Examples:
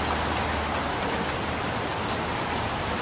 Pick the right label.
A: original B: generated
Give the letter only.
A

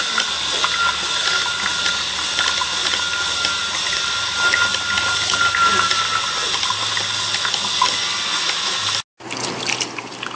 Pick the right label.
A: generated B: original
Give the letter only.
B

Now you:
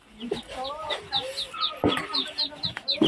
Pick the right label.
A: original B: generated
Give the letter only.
A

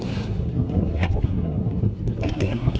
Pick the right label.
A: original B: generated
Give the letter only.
B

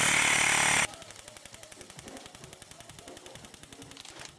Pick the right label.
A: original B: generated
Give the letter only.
A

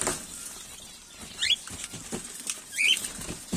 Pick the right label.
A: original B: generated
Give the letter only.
A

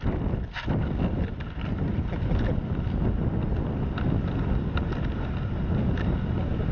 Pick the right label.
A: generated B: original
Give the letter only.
B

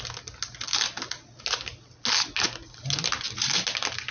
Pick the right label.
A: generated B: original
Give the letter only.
B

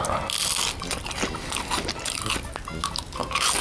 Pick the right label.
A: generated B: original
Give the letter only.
B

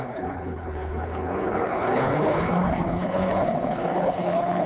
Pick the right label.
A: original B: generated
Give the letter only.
B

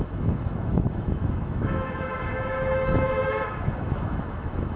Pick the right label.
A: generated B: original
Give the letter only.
A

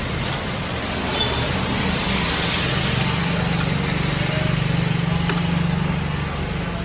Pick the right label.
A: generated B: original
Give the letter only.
B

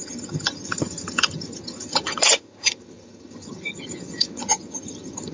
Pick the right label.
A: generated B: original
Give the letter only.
A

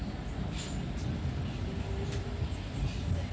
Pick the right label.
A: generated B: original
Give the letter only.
B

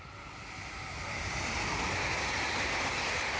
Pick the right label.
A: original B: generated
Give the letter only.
A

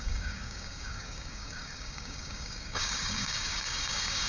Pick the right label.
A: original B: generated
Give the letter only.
B